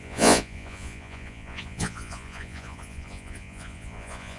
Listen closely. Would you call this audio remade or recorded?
remade